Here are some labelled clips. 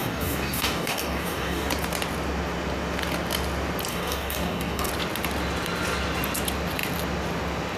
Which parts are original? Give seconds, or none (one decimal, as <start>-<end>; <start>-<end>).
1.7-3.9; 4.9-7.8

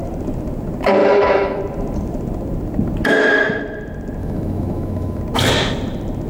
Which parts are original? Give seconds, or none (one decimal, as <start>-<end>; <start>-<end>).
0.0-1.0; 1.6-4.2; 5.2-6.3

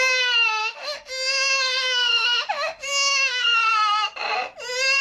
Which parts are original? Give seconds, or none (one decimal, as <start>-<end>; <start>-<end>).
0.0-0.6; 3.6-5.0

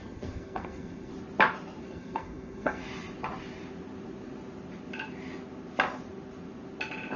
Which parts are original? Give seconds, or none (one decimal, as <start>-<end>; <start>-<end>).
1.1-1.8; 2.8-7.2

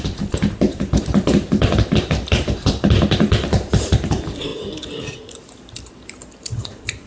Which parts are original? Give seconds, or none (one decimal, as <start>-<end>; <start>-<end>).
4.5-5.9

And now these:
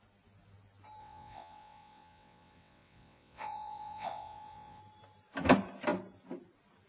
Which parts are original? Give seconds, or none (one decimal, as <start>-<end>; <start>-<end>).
0.0-1.0; 4.8-6.9

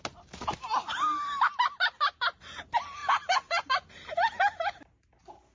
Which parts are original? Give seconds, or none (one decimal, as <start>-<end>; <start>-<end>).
0.0-5.5

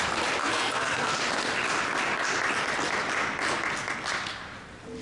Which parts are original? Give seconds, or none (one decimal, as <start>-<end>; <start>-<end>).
0.0-0.4; 1.2-5.0